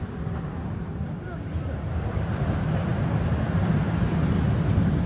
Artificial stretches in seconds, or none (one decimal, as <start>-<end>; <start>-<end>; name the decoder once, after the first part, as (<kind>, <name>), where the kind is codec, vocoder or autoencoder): none